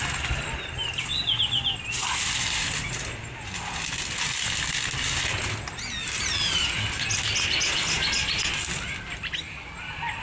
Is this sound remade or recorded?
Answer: recorded